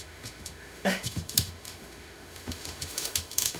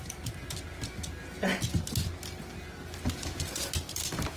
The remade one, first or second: first